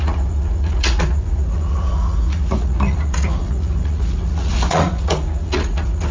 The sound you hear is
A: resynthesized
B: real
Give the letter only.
A